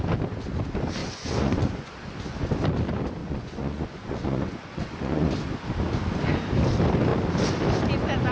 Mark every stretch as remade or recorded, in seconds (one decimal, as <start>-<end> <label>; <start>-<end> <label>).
0.0-1.0 recorded; 1.0-1.9 remade; 1.9-3.2 recorded; 3.2-5.3 remade; 5.3-8.3 recorded